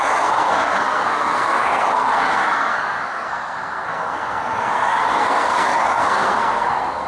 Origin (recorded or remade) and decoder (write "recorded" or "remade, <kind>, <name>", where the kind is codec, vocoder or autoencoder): remade, codec, SNAC